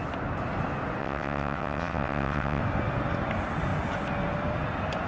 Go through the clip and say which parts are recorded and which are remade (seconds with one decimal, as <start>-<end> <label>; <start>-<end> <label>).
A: 0.0-1.0 recorded; 1.0-2.6 remade; 2.6-5.1 recorded